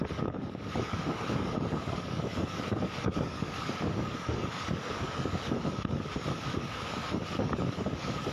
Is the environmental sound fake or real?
fake